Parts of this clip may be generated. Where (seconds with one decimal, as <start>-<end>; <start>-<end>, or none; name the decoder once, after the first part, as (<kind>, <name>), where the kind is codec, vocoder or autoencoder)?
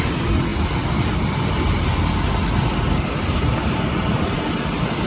none